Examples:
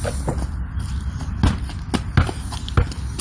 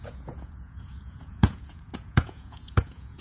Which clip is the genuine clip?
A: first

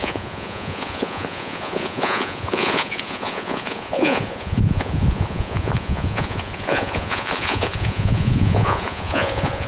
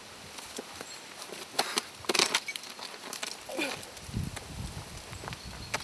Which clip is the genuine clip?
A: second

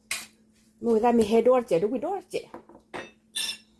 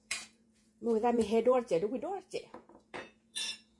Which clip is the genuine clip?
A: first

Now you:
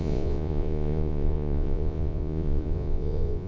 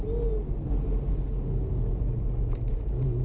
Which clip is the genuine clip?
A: second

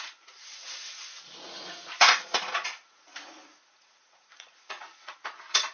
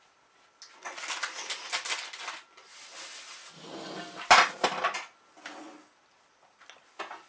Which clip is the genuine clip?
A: second